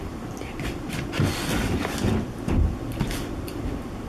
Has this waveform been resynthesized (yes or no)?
yes